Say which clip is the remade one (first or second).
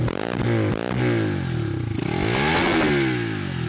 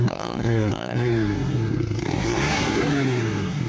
second